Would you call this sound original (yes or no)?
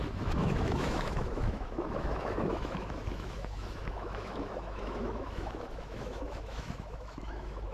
no